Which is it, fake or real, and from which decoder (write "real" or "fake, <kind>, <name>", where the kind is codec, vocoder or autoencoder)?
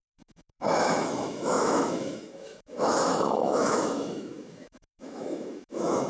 fake, autoencoder, DAC-VAE